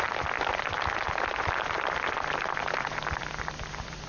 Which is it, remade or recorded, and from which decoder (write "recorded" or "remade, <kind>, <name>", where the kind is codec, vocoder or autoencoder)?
remade, vocoder, BigVGAN v2